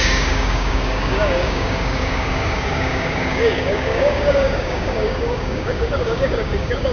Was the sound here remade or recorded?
remade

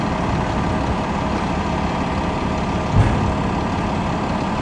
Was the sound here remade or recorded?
recorded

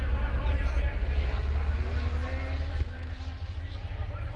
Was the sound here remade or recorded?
recorded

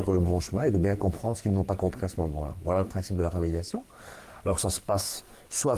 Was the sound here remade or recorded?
remade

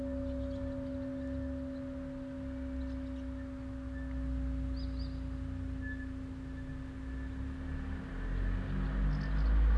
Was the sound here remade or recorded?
recorded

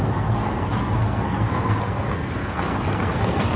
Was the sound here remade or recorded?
remade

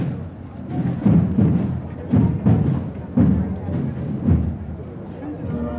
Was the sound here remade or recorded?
recorded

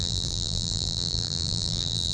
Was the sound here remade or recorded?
remade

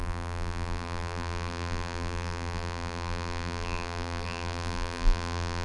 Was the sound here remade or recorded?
remade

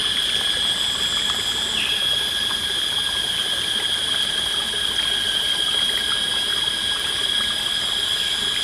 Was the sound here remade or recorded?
recorded